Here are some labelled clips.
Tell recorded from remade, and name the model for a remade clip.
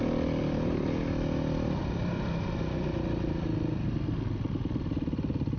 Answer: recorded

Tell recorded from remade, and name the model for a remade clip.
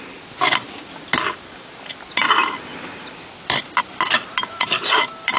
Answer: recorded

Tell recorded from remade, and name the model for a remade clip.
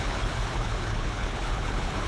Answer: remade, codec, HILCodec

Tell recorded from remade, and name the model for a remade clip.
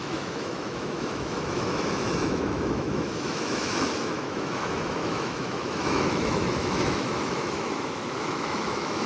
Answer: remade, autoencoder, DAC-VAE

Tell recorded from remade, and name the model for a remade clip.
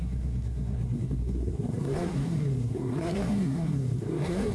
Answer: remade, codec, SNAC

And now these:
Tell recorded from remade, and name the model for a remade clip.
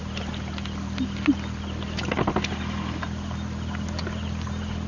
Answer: recorded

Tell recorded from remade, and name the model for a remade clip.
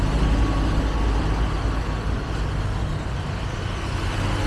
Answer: recorded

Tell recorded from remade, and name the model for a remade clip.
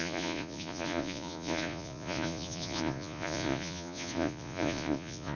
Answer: remade, vocoder, Vocos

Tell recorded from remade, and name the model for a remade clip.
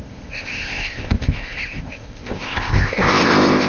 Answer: remade, codec, ZipCodec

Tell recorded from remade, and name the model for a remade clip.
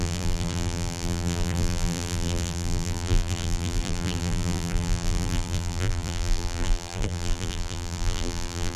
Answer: remade, vocoder, BigVGAN v2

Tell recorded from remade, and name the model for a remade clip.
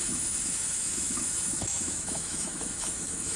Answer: remade, autoencoder, DAC-VAE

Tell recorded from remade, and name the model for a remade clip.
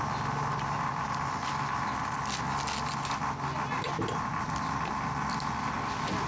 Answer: recorded